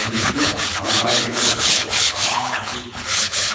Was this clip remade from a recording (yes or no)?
yes